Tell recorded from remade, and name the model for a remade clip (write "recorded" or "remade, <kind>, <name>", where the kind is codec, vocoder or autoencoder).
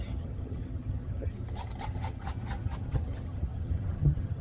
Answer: remade, vocoder, HiFi-GAN